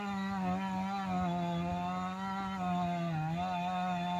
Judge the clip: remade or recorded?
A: recorded